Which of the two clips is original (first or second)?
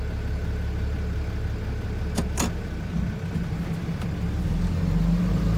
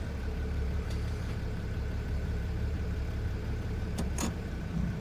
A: first